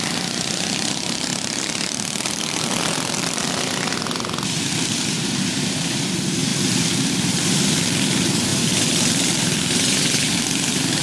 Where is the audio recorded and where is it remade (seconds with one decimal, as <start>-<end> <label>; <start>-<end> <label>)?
0.0-11.0 remade